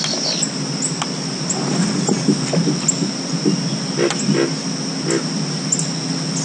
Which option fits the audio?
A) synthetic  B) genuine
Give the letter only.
B